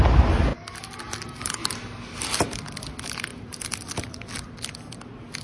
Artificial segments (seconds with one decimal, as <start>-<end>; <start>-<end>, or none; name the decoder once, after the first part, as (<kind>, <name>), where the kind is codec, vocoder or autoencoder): 3.3-4.3 (vocoder, BigVGAN v2)